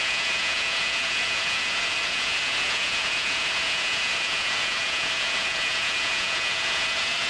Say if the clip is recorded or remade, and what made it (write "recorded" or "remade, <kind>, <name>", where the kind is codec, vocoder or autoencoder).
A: remade, vocoder, Vocos